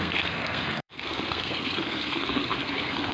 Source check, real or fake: fake